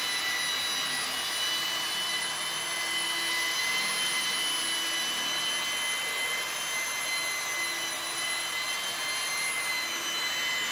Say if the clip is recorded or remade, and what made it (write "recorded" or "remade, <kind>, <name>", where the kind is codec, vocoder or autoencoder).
recorded